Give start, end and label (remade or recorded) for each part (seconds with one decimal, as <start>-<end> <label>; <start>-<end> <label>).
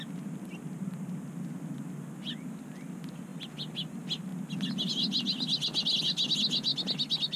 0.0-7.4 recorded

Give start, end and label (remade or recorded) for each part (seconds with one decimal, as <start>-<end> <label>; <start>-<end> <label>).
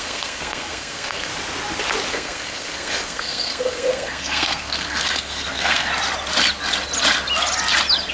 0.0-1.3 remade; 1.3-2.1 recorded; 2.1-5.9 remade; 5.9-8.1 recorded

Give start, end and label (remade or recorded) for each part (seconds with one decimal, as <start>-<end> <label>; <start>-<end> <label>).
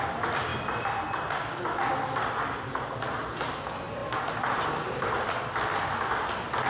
0.0-6.7 recorded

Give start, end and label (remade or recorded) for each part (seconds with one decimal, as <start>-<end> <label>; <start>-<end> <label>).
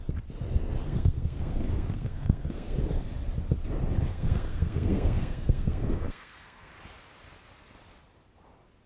0.0-0.8 recorded; 0.8-2.8 remade; 2.8-4.1 recorded; 4.1-6.7 remade; 6.7-8.9 recorded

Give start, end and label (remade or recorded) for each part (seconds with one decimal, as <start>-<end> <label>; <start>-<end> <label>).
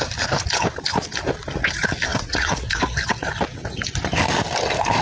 0.0-2.1 recorded; 2.1-2.8 remade; 2.8-5.0 recorded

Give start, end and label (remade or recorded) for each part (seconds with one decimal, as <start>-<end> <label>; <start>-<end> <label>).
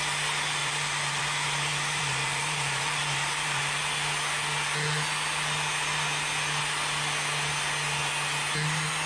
0.0-0.6 recorded; 0.6-1.2 remade; 1.2-1.7 recorded; 1.7-3.8 remade; 3.8-9.1 recorded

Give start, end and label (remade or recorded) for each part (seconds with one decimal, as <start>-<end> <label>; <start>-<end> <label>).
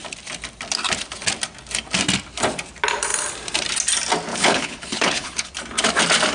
0.0-4.3 recorded; 4.3-5.5 remade; 5.5-6.3 recorded